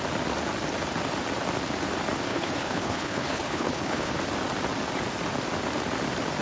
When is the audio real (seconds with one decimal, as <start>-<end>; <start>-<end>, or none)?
0.0-2.3; 4.1-6.4